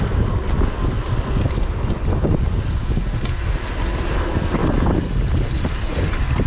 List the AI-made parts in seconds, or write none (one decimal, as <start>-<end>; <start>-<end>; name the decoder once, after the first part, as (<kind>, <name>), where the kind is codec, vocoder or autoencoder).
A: none